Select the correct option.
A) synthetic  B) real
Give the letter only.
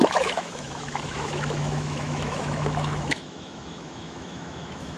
A